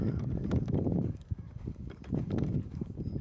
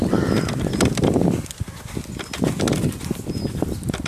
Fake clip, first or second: first